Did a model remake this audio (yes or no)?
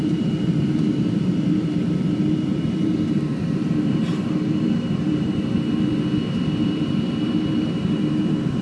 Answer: yes